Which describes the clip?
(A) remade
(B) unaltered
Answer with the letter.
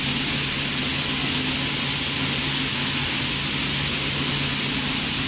B